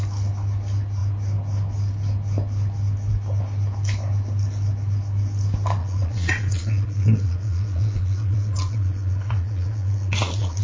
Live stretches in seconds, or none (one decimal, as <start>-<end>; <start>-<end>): 0.0-5.8